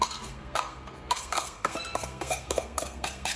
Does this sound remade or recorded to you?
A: remade